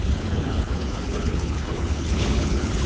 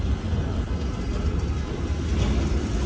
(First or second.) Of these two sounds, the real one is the second